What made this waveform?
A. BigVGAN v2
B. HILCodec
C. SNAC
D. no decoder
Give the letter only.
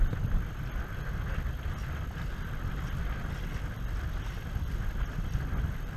A